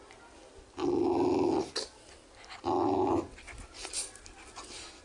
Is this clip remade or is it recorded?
recorded